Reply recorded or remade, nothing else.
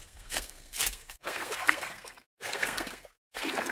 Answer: remade